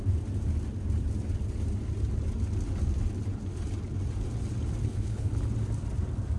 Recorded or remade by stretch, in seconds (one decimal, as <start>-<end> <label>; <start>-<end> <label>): 0.0-4.8 recorded; 4.8-5.3 remade; 5.3-6.4 recorded